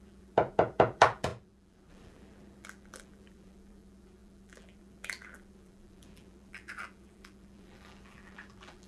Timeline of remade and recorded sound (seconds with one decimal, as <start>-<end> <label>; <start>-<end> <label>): 0.0-8.9 remade